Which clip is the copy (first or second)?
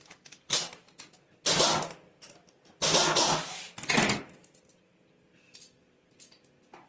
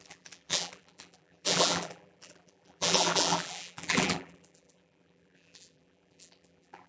second